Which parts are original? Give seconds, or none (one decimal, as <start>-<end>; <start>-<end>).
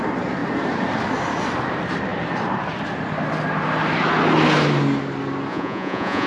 0.0-5.5